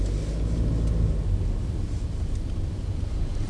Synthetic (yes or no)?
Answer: no